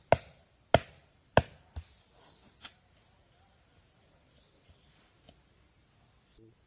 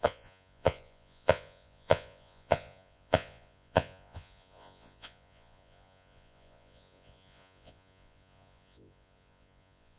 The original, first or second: first